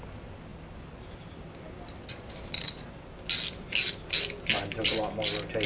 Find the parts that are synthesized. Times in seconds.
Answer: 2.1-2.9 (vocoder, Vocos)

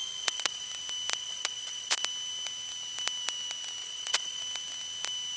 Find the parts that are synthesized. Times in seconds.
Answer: 0.0-0.7 (vocoder, Vocos); 1.1-2.0; 3.8-4.4

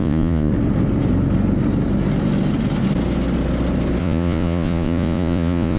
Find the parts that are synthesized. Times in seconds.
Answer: 0.0-0.5 (vocoder, Vocos); 4.0-5.8

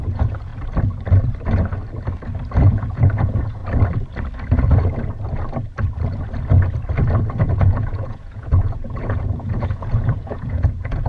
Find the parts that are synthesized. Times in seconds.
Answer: 0.0-0.5 (vocoder, Vocos); 2.7-3.6; 7.4-11.1

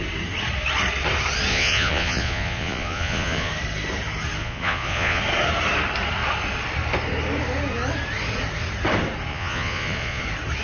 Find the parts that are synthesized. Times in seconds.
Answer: 1.5-3.5 (vocoder, Vocos); 4.4-5.2; 9.3-10.2

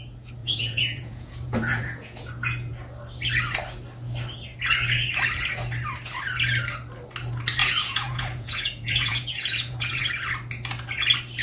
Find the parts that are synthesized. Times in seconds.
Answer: 0.4-2.3 (vocoder, Vocos); 7.6-10.0